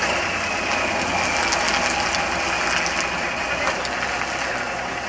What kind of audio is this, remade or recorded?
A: recorded